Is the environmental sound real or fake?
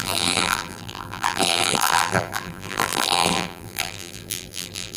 fake